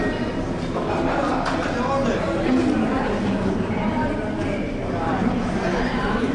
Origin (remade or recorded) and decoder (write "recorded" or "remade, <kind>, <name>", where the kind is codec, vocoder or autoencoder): recorded